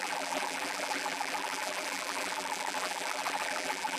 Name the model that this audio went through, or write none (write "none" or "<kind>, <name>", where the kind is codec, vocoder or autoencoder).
vocoder, BigVGAN v2